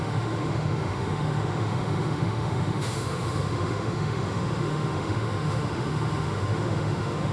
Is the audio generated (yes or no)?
yes